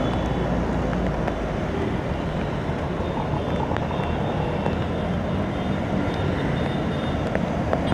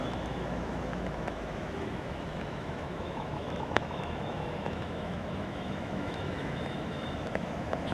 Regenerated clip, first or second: second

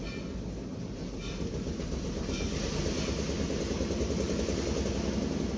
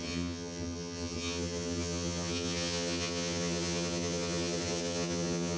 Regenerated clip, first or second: second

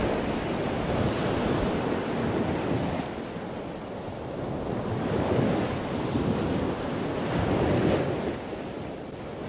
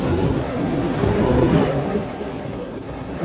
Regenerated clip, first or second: second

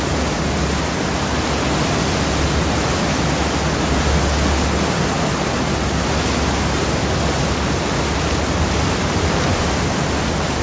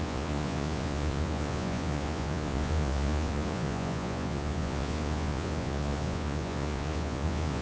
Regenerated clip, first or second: second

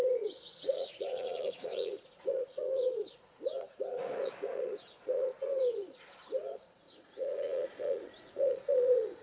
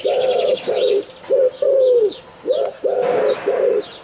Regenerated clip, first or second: first